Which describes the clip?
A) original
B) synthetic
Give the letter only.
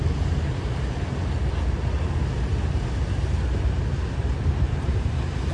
A